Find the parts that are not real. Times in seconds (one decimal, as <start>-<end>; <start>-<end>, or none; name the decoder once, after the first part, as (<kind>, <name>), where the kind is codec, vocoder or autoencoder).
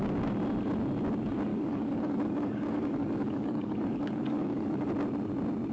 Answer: 1.5-4.9 (codec, DAC)